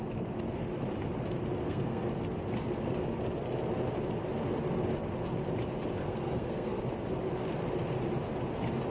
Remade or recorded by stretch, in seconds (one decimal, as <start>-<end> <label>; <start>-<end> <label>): 0.0-1.6 recorded; 1.6-2.1 remade; 2.1-6.0 recorded; 6.0-6.8 remade; 6.8-8.9 recorded